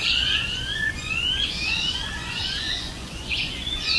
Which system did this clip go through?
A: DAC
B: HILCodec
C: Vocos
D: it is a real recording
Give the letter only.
C